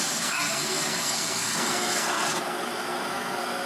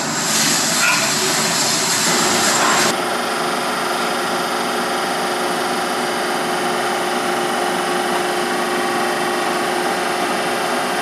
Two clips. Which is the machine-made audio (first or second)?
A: first